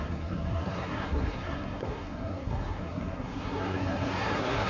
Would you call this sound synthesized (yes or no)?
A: yes